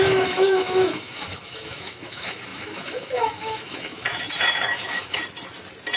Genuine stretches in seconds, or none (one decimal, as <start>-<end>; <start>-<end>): 5.2-6.0